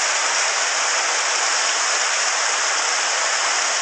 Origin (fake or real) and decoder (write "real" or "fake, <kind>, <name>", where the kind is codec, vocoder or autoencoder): real